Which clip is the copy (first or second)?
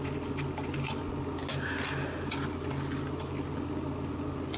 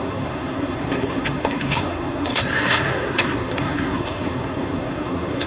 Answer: second